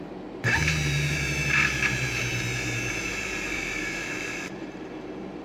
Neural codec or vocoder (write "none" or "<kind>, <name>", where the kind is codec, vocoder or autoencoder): vocoder, BigVGAN v2